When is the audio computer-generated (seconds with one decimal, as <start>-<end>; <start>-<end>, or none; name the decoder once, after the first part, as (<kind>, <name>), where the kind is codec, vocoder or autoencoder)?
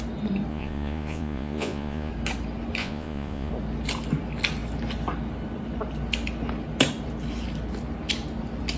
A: 0.5-2.1 (vocoder, Vocos); 2.8-3.5